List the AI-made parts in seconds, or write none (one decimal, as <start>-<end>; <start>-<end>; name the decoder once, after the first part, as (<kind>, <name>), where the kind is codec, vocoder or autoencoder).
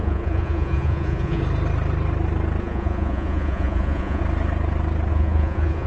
0.0-1.4 (vocoder, Vocos); 2.6-4.2; 5.1-5.9